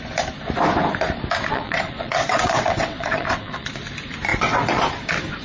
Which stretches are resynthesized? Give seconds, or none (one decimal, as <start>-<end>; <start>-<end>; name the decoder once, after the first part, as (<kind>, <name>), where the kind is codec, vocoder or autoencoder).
1.5-3.7 (vocoder, WaveNeXt); 4.3-4.8